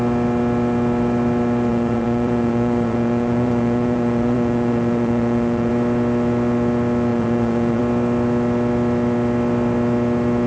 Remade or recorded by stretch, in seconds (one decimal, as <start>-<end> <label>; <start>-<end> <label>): 0.0-1.7 recorded; 1.7-5.7 remade; 5.7-7.1 recorded; 7.1-7.8 remade; 7.8-10.5 recorded